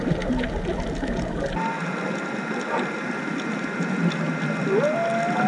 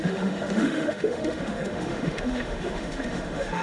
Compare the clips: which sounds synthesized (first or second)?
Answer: second